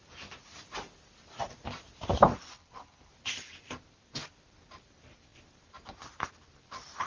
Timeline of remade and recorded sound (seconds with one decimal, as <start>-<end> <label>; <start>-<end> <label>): 0.0-2.5 recorded; 2.5-3.1 remade; 3.1-7.1 recorded